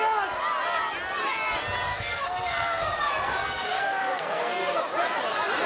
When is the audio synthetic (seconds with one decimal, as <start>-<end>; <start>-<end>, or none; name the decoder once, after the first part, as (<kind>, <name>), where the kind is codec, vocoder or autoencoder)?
1.9-4.8 (codec, SNAC)